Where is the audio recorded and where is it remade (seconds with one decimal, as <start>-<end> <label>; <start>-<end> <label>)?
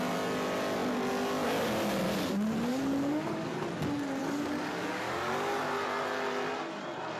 0.0-2.7 recorded; 2.7-3.6 remade; 3.6-4.2 recorded; 4.2-5.6 remade; 5.6-7.2 recorded